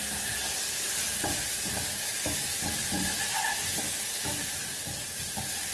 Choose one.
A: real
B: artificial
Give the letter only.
A